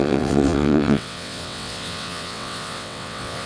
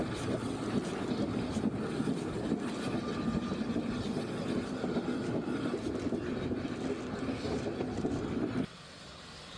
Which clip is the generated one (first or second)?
first